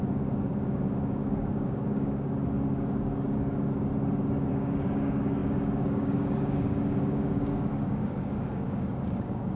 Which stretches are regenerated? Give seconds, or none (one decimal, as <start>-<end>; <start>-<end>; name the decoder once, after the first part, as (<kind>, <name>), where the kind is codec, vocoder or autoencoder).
0.0-3.9 (codec, DAC); 4.5-9.6